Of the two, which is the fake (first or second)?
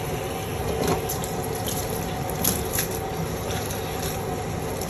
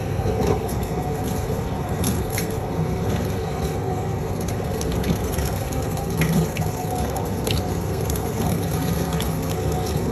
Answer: second